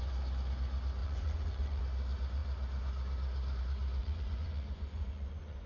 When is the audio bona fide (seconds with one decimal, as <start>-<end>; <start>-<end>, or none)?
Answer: 0.0-1.0; 1.8-4.0